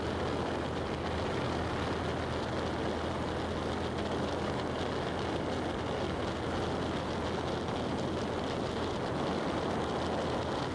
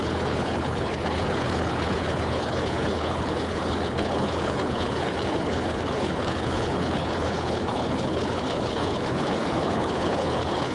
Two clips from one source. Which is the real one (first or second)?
first